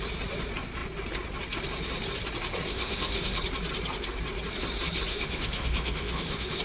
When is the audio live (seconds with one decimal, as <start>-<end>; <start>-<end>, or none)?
0.0-2.7; 3.4-5.1